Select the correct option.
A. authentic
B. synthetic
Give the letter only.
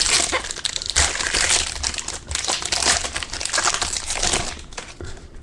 A